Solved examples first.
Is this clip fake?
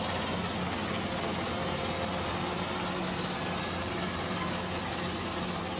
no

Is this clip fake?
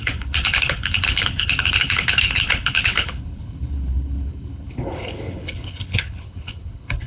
yes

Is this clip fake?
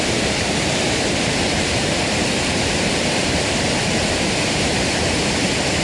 yes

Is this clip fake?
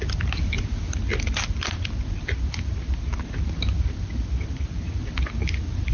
no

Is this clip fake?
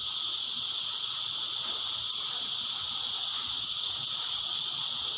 yes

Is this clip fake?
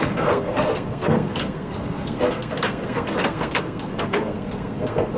yes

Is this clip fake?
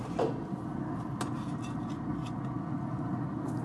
no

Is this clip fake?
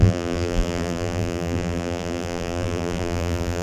yes